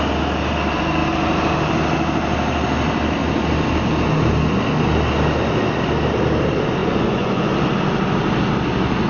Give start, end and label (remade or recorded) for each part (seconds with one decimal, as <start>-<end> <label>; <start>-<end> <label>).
0.0-6.8 recorded; 6.8-7.5 remade; 7.5-9.1 recorded